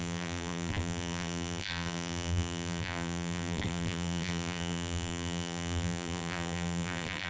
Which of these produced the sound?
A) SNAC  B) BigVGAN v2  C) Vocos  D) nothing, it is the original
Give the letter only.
B